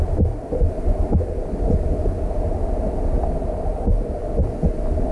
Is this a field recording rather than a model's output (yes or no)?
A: yes